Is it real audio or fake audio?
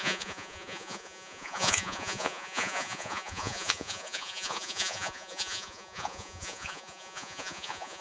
fake